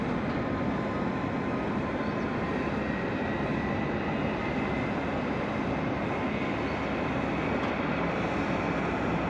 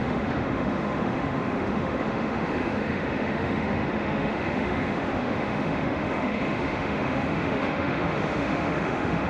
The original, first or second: first